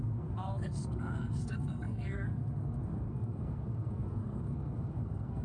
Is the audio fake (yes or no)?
yes